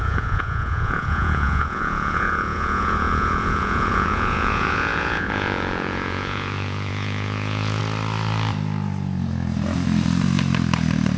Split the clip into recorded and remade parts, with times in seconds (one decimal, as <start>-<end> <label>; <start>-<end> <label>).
0.0-7.8 remade; 7.8-11.2 recorded